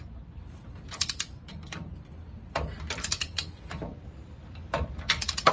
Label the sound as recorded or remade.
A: recorded